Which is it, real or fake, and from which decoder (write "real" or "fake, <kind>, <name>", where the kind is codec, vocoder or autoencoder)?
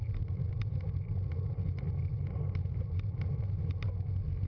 real